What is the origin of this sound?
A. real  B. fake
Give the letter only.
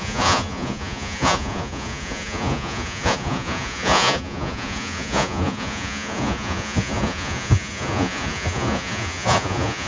B